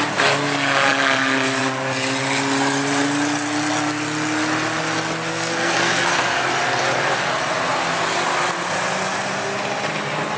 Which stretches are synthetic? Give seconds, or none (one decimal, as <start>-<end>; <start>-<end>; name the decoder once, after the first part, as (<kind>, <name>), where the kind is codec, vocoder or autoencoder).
5.3-6.4 (codec, SNAC)